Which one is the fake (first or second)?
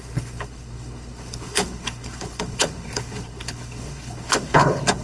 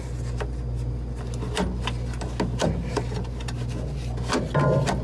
first